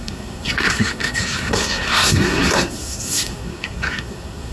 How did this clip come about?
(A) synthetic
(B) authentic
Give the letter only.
A